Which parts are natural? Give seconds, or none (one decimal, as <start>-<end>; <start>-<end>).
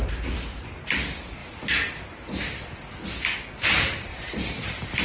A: 0.0-1.4; 2.7-4.1